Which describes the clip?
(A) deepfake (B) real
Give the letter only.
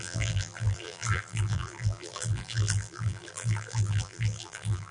A